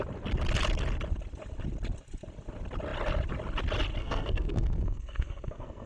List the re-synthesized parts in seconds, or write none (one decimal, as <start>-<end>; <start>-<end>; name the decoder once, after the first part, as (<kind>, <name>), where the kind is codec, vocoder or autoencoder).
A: 4.0-5.9 (codec, SNAC)